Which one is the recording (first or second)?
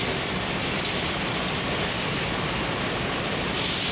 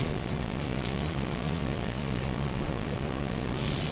first